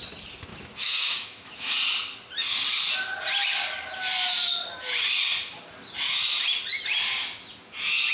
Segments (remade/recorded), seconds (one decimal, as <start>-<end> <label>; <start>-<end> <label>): 0.0-0.5 recorded; 0.5-1.7 remade; 1.7-8.1 recorded